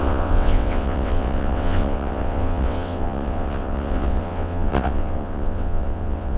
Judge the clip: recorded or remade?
remade